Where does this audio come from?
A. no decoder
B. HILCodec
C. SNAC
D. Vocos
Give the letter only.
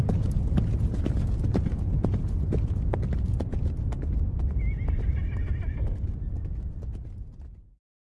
A